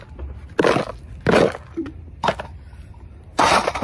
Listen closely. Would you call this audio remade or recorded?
recorded